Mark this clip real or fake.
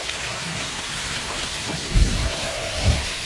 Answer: fake